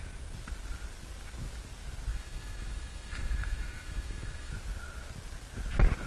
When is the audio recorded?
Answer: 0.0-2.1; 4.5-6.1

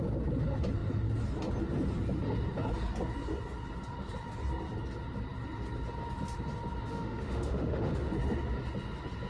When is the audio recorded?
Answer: 0.0-6.9; 7.9-9.3

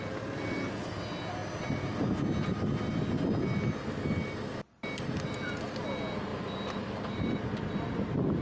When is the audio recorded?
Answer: 0.0-6.3; 7.7-8.4